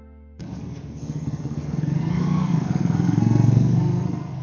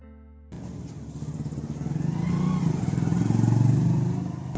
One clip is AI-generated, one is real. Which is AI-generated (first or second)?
first